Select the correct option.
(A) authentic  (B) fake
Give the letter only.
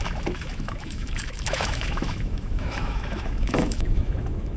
B